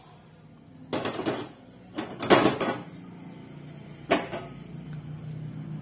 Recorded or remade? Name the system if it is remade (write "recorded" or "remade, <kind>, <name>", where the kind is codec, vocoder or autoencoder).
recorded